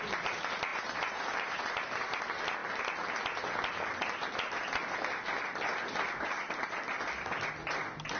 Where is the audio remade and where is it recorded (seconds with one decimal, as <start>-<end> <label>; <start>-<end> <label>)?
0.0-0.7 recorded; 0.7-2.2 remade; 2.2-8.2 recorded